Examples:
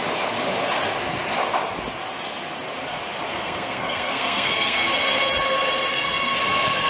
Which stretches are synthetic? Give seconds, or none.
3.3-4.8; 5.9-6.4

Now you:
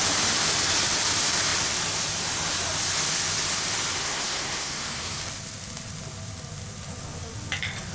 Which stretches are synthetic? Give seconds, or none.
4.0-5.2

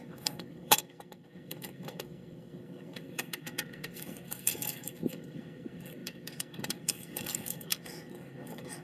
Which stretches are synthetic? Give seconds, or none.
0.0-8.8

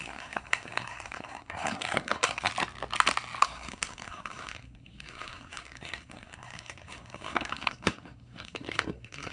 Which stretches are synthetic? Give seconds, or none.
0.0-2.5; 3.4-9.3

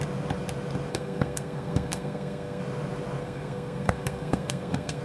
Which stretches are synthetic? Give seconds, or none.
0.9-2.6; 3.2-5.0

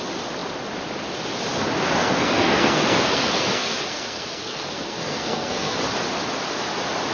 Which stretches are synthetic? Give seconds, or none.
2.0-5.8

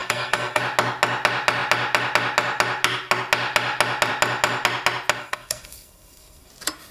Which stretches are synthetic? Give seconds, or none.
0.0-0.6; 5.2-6.5

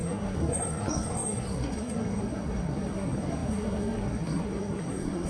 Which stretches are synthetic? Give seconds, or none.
0.0-5.3